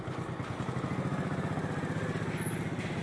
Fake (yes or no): no